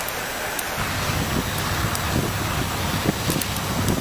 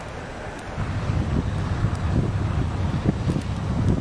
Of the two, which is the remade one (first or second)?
second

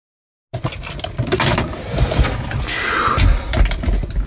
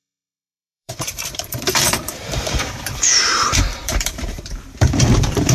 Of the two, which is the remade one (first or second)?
second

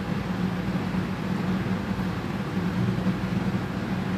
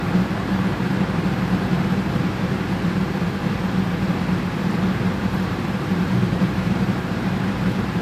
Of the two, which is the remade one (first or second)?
second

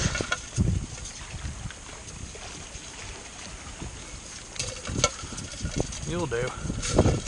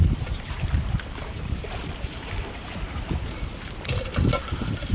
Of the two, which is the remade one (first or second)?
second